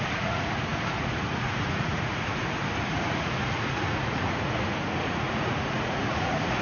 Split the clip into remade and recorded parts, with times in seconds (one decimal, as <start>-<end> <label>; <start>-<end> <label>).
0.0-2.4 remade; 2.4-2.9 recorded; 2.9-6.6 remade